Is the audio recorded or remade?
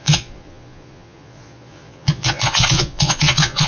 remade